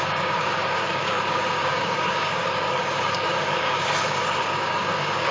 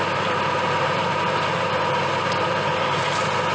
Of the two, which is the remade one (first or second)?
first